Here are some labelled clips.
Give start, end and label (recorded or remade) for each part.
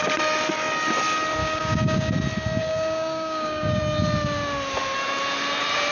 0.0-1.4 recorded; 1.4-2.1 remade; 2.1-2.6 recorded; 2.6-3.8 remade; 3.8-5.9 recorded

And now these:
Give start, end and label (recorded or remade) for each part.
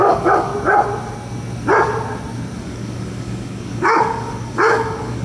0.0-0.5 remade; 0.5-2.6 recorded; 2.6-5.2 remade